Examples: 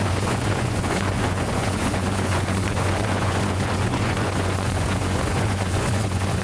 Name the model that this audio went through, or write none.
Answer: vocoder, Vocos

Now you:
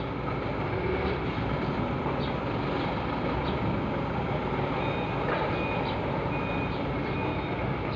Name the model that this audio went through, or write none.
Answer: none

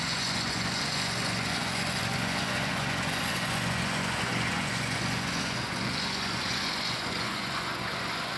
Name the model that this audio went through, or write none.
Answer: vocoder, Vocos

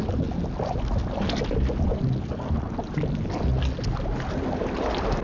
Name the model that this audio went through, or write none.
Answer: none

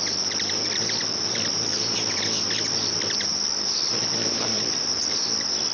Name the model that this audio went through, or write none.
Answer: none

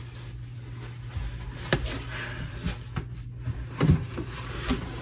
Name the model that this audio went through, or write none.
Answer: none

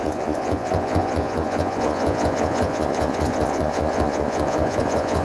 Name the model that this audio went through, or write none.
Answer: vocoder, Vocos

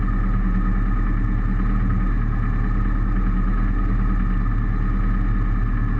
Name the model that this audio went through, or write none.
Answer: none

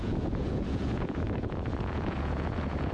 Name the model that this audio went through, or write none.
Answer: vocoder, Vocos